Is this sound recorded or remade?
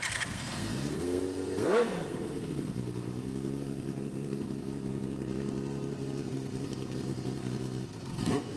remade